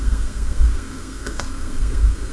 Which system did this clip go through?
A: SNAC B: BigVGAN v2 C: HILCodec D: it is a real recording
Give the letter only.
A